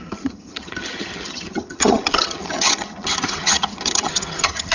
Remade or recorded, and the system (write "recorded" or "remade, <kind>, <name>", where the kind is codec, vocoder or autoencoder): remade, vocoder, HiFi-GAN